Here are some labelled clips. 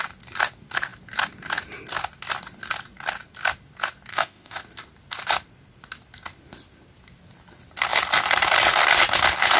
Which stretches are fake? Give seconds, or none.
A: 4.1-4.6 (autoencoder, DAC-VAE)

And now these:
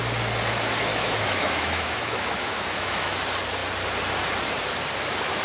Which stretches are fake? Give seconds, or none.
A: 0.9-3.2 (autoencoder, DAC-VAE)

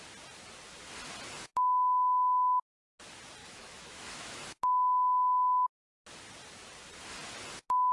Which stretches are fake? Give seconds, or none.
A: 3.4-4.4 (autoencoder, DAC-VAE)

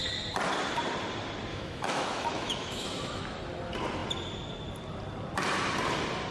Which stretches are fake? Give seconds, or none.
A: 1.5-3.2 (autoencoder, DAC-VAE)

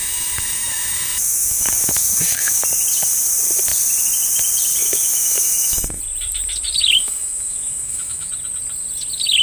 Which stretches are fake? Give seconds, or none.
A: 0.0-2.6 (autoencoder, DAC-VAE); 4.8-6.0; 7.0-8.3